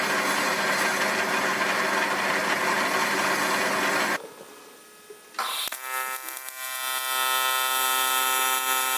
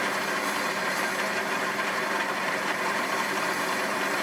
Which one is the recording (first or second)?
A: first